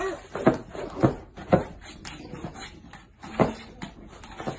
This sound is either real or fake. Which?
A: real